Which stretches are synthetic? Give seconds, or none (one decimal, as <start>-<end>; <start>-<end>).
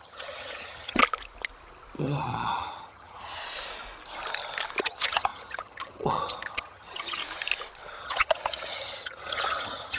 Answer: 0.0-1.0; 2.0-3.4; 4.8-7.2; 8.0-10.0